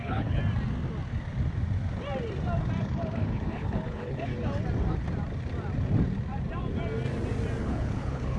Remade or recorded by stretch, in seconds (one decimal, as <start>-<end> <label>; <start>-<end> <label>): 0.0-0.4 remade; 0.4-2.8 recorded; 2.8-4.3 remade; 4.3-7.6 recorded; 7.6-8.4 remade